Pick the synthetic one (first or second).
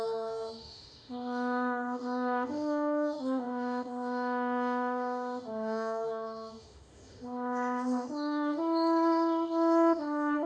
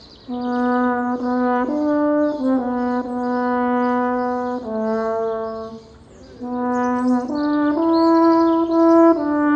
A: first